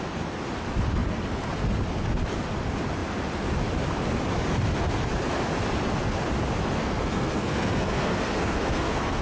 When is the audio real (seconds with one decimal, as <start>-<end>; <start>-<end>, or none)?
0.0-6.8